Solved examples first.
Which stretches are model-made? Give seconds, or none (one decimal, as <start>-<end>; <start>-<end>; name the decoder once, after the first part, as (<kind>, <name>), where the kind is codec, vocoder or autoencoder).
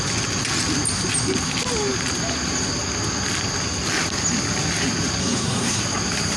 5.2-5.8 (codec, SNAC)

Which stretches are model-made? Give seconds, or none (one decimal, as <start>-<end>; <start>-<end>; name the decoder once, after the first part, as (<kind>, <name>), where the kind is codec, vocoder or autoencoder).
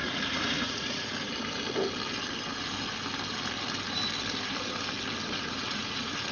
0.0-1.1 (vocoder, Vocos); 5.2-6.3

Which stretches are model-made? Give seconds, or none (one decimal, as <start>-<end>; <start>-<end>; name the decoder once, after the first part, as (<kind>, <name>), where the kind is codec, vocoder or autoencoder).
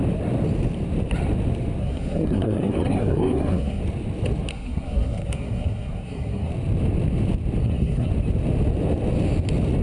1.8-3.8 (codec, SNAC); 4.5-6.5; 7.6-8.1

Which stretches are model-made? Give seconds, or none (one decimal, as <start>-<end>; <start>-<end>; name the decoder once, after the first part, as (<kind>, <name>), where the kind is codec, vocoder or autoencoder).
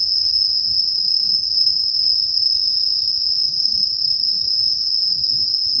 0.0-1.6 (vocoder, Vocos); 4.9-5.8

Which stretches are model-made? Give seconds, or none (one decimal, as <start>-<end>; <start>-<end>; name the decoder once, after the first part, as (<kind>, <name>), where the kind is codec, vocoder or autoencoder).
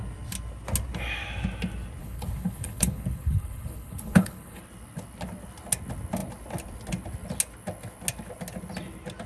2.0-4.6 (codec, HILCodec)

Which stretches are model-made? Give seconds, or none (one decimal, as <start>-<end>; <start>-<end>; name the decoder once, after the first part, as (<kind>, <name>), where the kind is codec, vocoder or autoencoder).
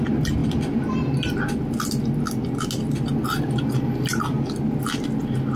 none